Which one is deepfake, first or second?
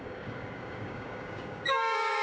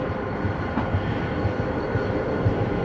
first